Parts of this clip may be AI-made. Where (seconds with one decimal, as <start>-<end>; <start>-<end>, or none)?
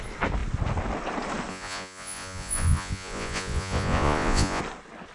1.5-4.6